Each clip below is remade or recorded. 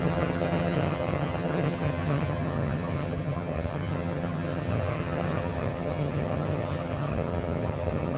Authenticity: remade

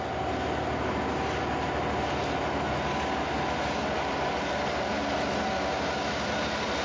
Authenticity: recorded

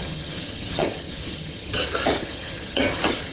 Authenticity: remade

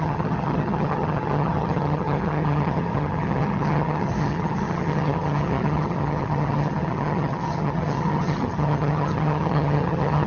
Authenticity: remade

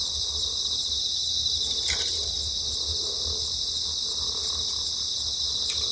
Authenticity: recorded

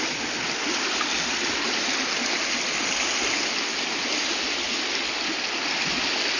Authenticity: recorded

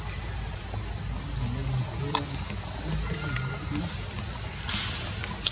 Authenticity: recorded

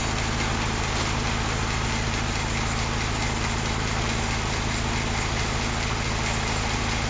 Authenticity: recorded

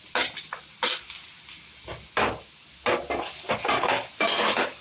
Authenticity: recorded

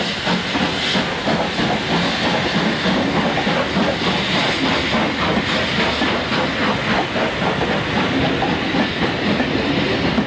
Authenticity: recorded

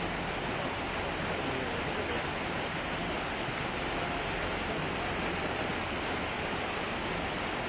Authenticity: recorded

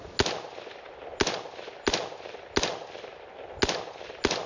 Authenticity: recorded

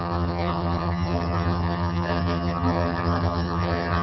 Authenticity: remade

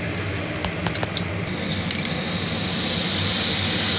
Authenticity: recorded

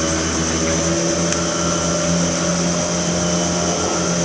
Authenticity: recorded